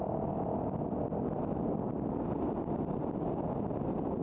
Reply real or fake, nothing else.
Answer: real